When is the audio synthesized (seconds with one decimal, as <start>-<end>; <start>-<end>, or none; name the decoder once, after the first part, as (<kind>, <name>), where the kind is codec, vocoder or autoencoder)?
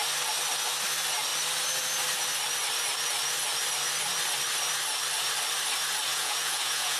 6.1-7.0 (vocoder, Vocos)